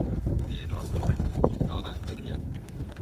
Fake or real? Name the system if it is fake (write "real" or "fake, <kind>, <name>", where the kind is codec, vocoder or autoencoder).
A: fake, codec, SNAC